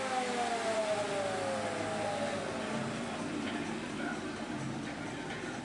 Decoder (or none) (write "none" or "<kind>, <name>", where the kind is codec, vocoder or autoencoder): none